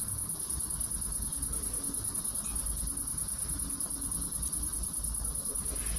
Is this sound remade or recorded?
recorded